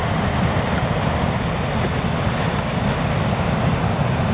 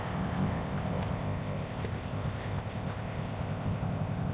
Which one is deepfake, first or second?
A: second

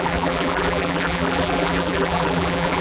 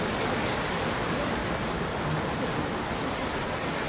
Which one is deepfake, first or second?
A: first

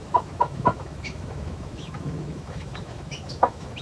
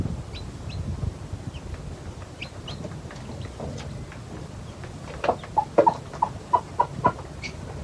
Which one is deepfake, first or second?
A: first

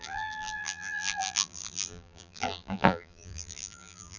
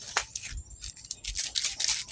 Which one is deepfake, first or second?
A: first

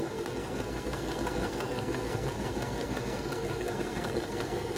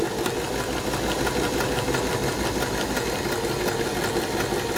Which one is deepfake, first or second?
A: first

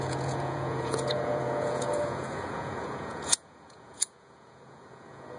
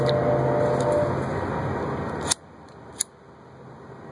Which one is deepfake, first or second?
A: first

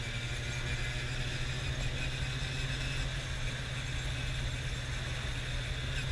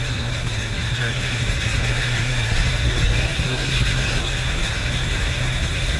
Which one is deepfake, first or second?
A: second